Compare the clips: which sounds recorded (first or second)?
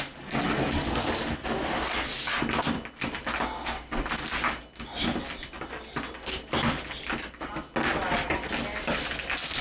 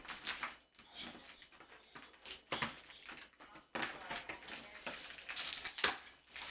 first